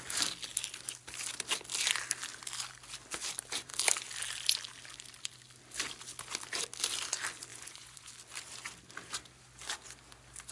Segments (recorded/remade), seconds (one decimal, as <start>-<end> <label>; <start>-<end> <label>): 0.0-7.5 recorded; 7.5-8.1 remade; 8.1-10.5 recorded

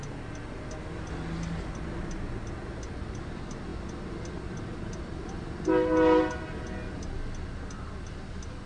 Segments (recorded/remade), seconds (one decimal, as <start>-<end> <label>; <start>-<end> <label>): 0.0-8.7 recorded

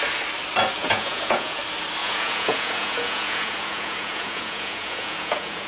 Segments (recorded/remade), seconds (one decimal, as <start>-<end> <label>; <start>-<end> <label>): 0.0-0.8 recorded; 0.8-1.6 remade; 1.6-2.0 recorded; 2.0-5.7 remade

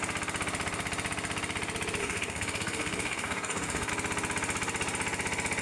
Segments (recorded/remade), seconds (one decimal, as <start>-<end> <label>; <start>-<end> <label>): 0.0-2.0 recorded; 2.0-3.9 remade; 3.9-5.6 recorded

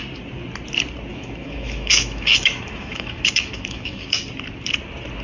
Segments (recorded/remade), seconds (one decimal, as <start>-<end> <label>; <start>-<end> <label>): 0.0-1.1 recorded; 1.1-4.2 remade; 4.2-5.2 recorded

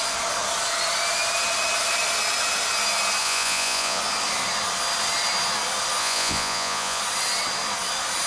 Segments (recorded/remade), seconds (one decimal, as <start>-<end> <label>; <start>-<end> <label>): 0.0-3.2 recorded; 3.2-4.0 remade; 4.0-6.0 recorded; 6.0-7.0 remade; 7.0-8.3 recorded

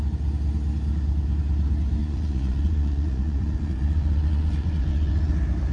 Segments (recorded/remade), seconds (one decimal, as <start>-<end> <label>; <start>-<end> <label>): 0.0-2.0 recorded; 2.0-5.3 remade; 5.3-5.7 recorded

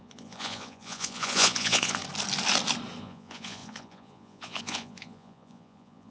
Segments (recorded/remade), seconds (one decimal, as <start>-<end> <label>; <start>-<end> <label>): 0.0-2.0 remade; 2.0-3.0 recorded; 3.0-6.1 remade